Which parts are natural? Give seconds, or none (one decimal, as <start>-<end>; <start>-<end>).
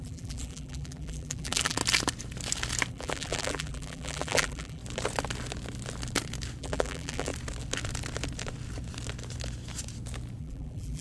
1.8-2.9; 4.8-6.6; 7.3-10.4